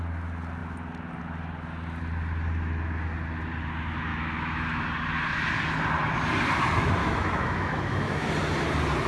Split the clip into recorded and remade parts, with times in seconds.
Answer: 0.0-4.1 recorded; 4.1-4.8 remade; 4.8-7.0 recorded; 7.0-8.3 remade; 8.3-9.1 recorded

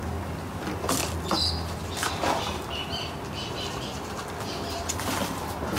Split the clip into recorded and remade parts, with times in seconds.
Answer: 0.0-5.8 recorded

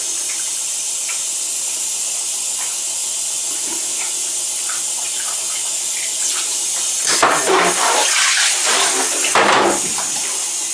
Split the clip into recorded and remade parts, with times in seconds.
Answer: 0.0-10.7 recorded

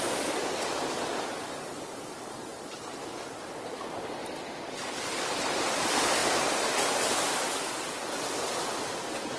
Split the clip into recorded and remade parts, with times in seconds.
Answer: 0.0-9.4 recorded

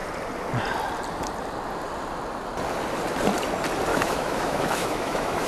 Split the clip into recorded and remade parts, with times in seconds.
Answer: 0.0-3.9 recorded; 3.9-5.5 remade

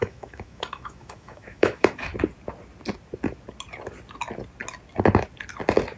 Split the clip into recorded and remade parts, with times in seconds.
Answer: 0.0-2.1 remade; 2.1-6.0 recorded